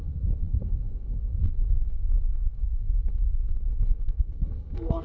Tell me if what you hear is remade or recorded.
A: remade